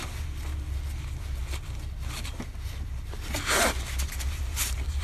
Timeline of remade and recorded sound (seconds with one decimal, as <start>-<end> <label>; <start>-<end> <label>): 0.0-5.0 recorded